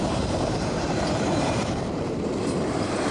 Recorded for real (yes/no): no